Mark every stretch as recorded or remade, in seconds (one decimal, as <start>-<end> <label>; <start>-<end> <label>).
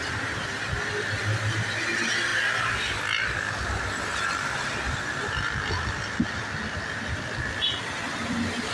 0.0-8.7 recorded